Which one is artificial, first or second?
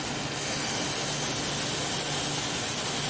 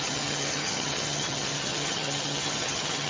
second